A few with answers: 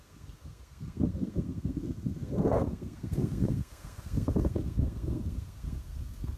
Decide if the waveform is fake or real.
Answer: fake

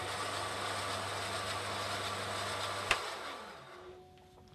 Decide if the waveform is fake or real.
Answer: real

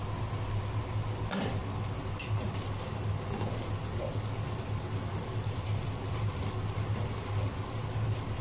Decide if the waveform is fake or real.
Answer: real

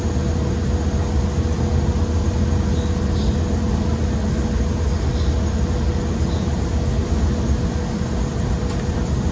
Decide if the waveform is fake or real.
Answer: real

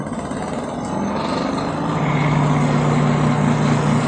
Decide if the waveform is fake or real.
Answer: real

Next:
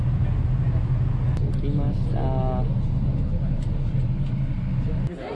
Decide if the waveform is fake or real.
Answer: real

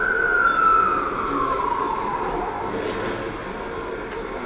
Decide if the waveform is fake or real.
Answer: real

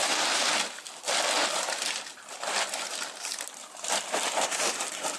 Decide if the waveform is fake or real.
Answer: real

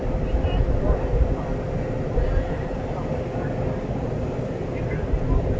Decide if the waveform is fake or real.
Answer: real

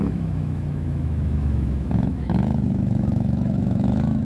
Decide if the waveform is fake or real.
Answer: fake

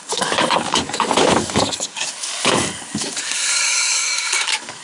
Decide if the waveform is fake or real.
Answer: fake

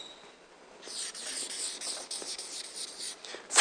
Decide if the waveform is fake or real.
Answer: real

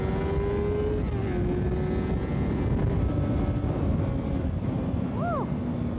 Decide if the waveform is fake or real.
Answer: real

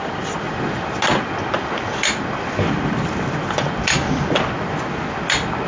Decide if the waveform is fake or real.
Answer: real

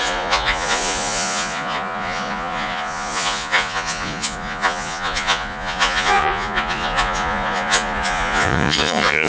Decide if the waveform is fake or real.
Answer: fake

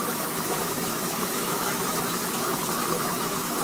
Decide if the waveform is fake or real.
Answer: fake